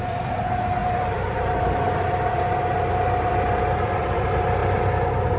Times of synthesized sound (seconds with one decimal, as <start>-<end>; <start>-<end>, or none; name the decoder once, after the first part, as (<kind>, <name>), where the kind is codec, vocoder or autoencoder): 0.0-4.6 (vocoder, BigVGAN v2)